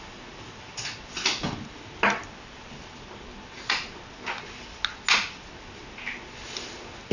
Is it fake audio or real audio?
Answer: real